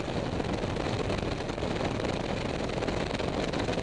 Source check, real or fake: real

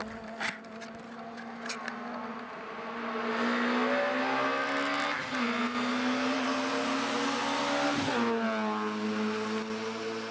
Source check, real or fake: real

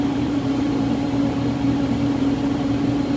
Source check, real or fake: fake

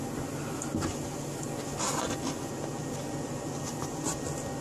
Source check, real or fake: real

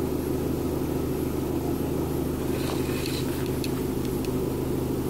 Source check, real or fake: real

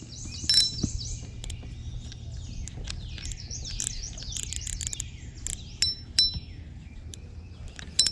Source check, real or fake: real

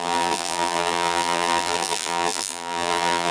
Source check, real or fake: fake